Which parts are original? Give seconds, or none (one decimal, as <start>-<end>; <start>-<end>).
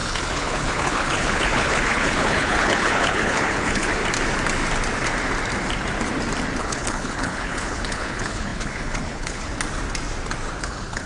4.0-6.6; 9.5-10.6